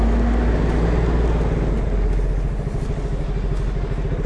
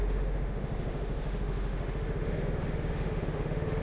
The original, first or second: first